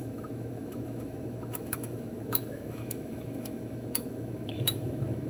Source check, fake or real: fake